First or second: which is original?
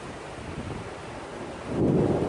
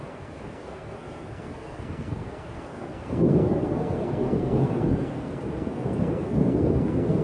first